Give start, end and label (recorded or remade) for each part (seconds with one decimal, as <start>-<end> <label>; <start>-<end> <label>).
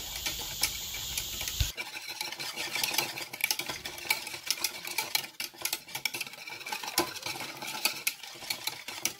0.0-9.2 recorded